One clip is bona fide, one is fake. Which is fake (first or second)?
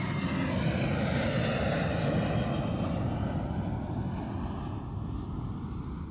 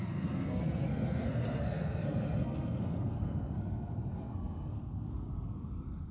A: second